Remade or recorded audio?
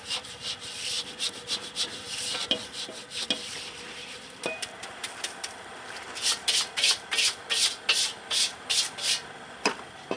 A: recorded